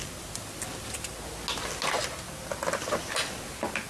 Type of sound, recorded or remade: recorded